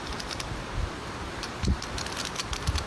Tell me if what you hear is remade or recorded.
remade